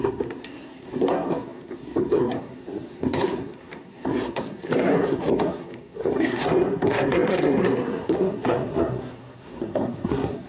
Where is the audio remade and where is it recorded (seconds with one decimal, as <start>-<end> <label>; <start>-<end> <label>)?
0.0-10.5 remade